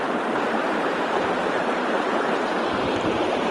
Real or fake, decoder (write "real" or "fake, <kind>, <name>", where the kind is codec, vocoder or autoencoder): fake, vocoder, BigVGAN v2